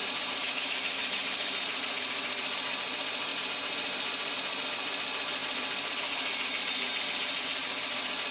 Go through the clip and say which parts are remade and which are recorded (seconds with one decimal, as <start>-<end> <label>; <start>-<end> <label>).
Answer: 0.0-8.3 recorded